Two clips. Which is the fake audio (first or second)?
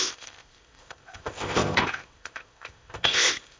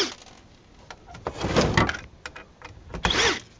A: first